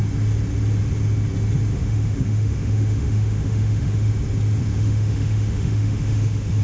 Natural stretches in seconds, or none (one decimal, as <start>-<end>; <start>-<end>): 0.0-1.7; 4.1-4.7